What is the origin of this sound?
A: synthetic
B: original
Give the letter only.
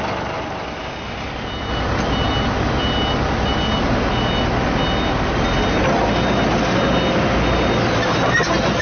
B